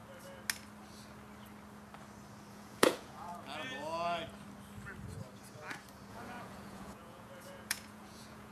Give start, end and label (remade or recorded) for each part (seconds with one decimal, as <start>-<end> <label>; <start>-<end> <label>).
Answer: 0.0-2.5 recorded; 2.5-3.3 remade; 3.3-6.1 recorded; 6.1-8.5 remade